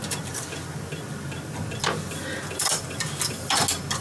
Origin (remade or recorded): recorded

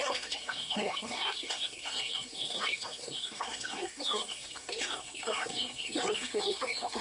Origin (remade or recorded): remade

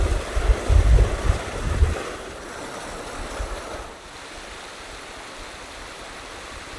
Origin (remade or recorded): recorded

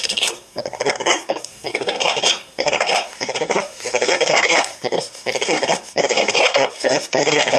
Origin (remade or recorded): remade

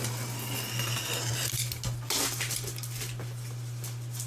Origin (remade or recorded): recorded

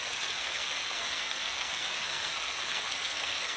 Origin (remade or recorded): remade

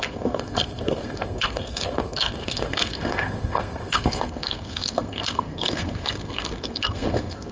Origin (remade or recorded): remade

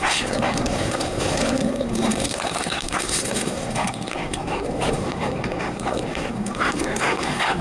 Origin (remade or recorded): remade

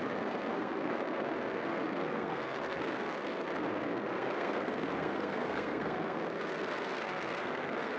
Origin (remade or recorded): remade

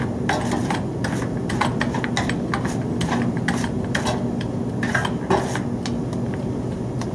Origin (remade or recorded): recorded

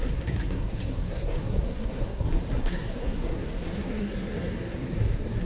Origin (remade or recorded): remade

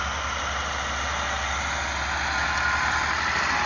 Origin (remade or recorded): recorded